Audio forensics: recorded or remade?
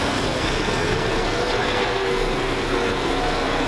remade